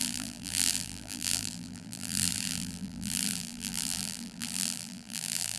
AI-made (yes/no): yes